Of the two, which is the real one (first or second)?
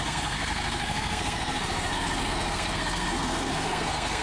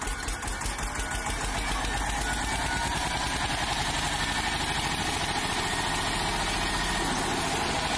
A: second